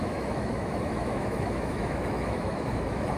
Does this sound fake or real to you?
fake